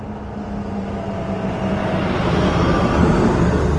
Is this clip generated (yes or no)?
no